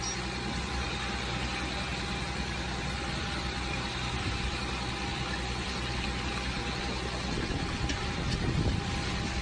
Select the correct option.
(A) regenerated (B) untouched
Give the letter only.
B